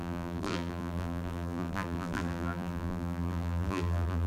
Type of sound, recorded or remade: remade